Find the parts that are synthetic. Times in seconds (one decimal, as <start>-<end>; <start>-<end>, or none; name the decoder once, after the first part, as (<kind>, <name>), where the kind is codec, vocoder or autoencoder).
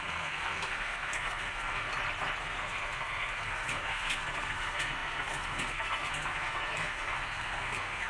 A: 0.0-1.9 (codec, SNAC); 2.4-8.1